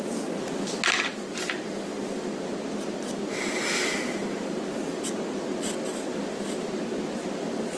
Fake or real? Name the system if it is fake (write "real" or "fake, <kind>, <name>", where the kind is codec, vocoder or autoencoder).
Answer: real